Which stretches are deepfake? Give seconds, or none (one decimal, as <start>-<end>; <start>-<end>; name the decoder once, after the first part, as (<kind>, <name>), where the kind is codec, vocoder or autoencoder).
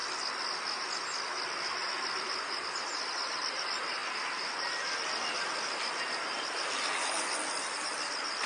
none